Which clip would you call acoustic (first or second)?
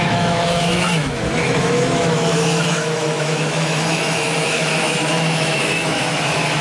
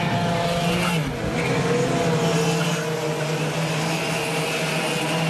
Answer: second